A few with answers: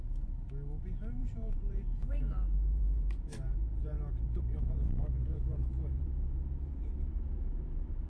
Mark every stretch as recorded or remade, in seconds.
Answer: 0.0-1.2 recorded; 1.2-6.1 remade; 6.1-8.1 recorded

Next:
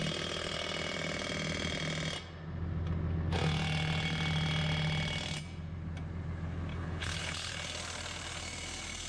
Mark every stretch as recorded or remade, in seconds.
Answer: 0.0-6.7 recorded; 6.7-7.5 remade; 7.5-9.1 recorded

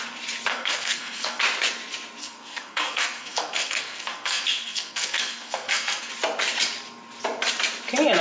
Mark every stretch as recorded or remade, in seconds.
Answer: 0.0-0.5 recorded; 0.5-1.4 remade; 1.4-2.2 recorded; 2.2-6.1 remade; 6.1-8.2 recorded